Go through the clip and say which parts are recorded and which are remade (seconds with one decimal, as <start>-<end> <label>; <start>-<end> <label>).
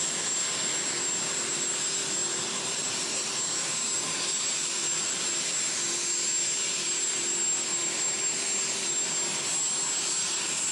0.0-10.7 recorded